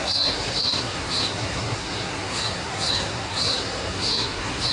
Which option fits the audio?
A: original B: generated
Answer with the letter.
B